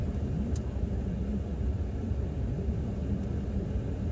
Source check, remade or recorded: recorded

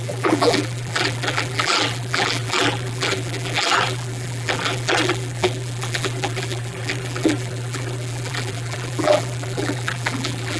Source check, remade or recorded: remade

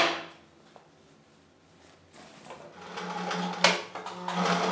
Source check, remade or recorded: recorded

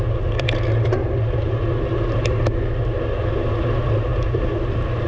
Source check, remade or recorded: recorded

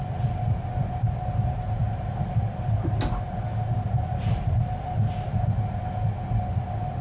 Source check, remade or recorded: recorded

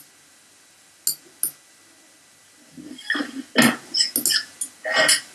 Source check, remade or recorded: recorded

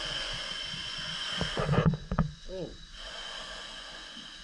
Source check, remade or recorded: remade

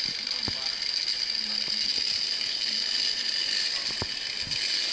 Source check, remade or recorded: recorded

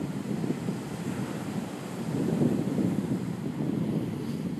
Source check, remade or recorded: recorded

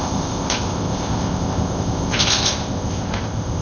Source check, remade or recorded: remade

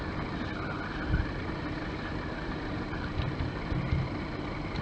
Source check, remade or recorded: recorded